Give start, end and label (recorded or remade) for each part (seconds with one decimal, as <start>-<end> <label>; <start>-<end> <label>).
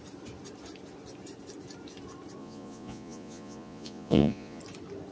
0.0-2.4 recorded; 2.4-4.6 remade; 4.6-5.1 recorded